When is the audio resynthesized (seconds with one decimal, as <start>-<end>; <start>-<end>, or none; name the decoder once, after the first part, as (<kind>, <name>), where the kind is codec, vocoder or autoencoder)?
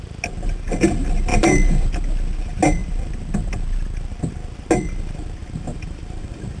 1.3-2.0 (vocoder, BigVGAN v2); 5.4-6.6